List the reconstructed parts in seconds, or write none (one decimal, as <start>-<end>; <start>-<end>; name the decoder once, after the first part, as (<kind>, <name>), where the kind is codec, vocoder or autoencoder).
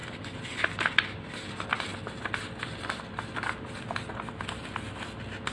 none